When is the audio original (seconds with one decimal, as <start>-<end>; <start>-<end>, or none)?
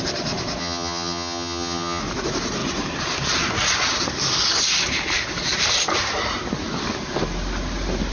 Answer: 0.0-0.6; 2.0-8.1